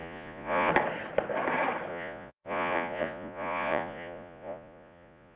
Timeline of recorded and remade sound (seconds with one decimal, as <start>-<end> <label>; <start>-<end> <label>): 0.0-0.7 remade; 0.7-1.9 recorded; 1.9-5.4 remade